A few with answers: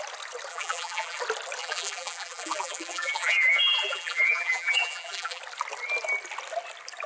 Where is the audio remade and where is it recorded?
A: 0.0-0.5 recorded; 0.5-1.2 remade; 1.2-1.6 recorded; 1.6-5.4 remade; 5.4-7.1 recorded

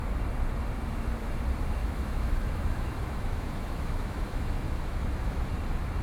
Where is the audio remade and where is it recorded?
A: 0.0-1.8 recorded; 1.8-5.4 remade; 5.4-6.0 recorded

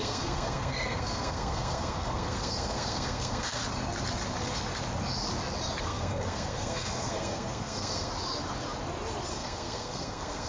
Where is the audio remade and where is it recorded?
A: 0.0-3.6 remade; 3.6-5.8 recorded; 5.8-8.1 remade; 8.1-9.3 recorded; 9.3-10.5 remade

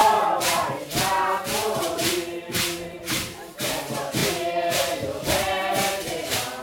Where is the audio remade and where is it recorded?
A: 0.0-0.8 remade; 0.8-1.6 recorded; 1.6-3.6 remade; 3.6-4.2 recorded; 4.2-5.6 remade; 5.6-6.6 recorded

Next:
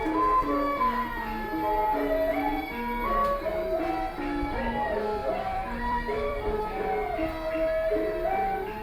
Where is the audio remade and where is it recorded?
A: 0.0-5.2 recorded; 5.2-6.6 remade; 6.6-8.8 recorded

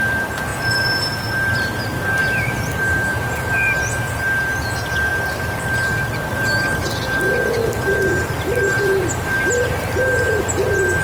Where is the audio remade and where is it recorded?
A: 0.0-0.5 recorded; 0.5-1.2 remade; 1.2-2.2 recorded; 2.2-3.4 remade; 3.4-7.6 recorded; 7.6-9.5 remade; 9.5-11.0 recorded